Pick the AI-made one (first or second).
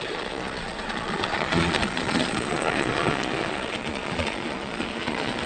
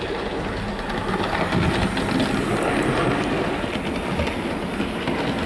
first